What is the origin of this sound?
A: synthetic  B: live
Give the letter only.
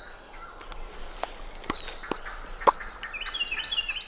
B